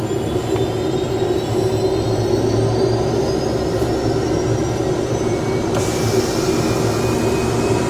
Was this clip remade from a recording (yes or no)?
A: no